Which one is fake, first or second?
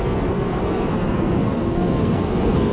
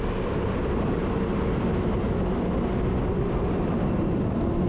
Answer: first